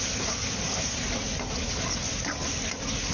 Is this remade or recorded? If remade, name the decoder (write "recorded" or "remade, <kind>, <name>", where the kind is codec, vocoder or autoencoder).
recorded